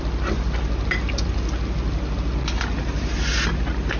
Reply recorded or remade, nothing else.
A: recorded